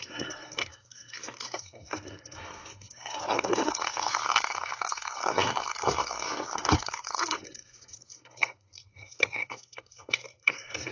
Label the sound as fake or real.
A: fake